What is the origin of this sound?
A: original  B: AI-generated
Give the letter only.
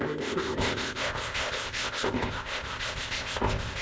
B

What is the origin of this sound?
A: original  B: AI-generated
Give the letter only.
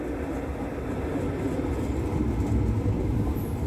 B